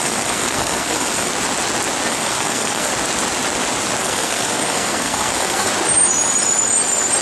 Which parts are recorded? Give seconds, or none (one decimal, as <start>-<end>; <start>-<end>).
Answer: 1.3-2.1; 2.9-4.0; 5.7-7.2